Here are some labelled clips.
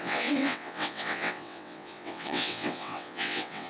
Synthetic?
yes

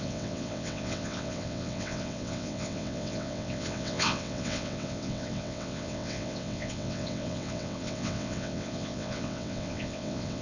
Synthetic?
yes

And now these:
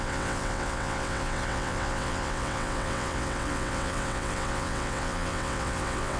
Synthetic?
yes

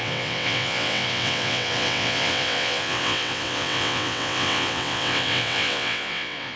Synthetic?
yes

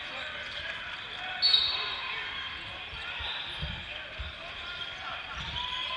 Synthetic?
no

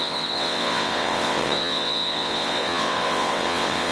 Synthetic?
yes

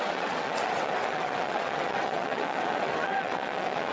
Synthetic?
yes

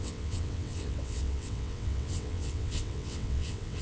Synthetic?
yes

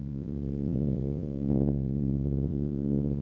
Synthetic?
yes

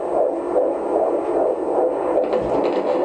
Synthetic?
no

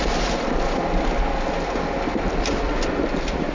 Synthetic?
no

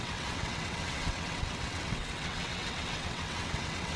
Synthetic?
yes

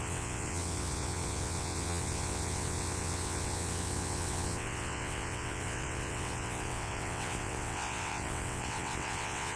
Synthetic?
yes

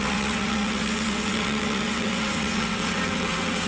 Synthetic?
yes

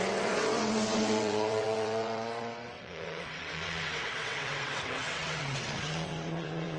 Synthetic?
yes